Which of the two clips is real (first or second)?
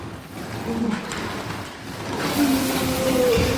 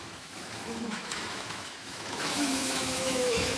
first